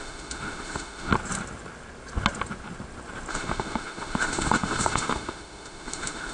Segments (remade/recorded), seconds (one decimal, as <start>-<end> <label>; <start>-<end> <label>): 0.0-1.1 remade; 1.1-3.3 recorded; 3.3-6.3 remade